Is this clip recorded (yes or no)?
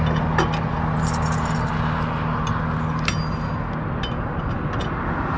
yes